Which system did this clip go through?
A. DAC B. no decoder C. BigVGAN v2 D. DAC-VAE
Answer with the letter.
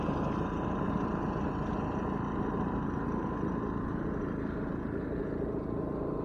C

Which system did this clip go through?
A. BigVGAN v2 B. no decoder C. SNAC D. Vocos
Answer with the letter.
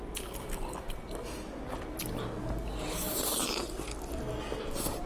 B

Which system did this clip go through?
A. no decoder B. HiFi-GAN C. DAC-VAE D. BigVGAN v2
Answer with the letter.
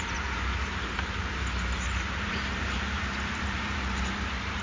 D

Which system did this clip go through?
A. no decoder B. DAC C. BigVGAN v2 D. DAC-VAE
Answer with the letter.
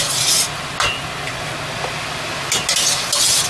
A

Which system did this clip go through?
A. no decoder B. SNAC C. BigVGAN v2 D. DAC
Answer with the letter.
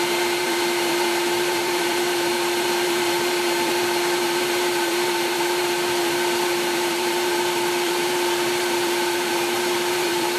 C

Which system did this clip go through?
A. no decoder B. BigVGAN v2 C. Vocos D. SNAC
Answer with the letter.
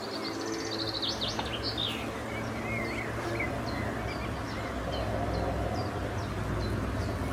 A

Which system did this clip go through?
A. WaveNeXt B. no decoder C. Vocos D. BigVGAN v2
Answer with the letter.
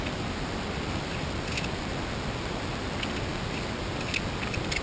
B